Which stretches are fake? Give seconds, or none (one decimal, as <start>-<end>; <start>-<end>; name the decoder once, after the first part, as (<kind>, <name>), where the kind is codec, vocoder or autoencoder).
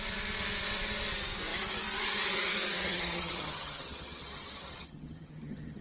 2.8-5.8 (vocoder, HiFi-GAN)